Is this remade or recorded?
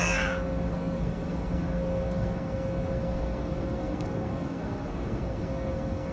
remade